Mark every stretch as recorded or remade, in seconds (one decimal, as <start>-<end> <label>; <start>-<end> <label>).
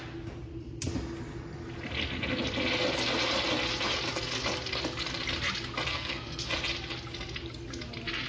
0.0-5.9 recorded; 5.9-6.5 remade; 6.5-8.3 recorded